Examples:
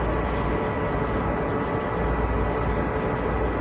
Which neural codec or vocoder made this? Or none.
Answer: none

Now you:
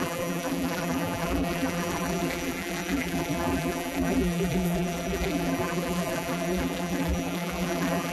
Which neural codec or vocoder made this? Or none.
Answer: vocoder, BigVGAN v2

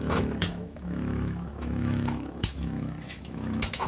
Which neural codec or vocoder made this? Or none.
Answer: autoencoder, DAC-VAE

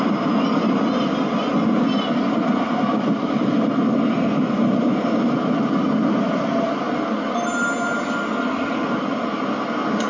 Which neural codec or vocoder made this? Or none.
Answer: none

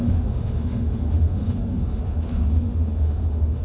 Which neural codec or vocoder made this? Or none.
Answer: autoencoder, DAC-VAE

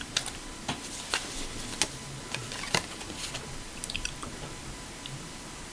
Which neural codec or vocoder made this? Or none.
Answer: none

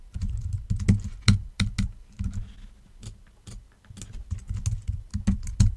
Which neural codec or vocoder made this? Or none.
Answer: none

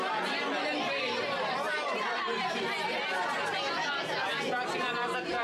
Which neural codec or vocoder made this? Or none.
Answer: none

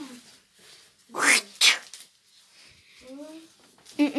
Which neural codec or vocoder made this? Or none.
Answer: none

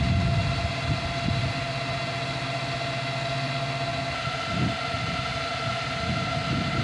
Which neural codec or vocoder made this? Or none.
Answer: none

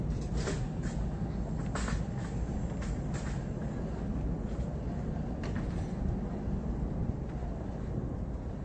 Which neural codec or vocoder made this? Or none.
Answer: none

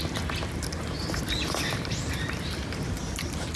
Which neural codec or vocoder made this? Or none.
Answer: none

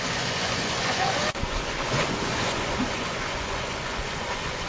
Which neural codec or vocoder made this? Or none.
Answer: vocoder, Vocos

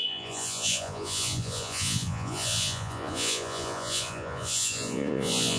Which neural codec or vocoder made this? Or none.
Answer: vocoder, Vocos